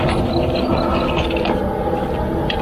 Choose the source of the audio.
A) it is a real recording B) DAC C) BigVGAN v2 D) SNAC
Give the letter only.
A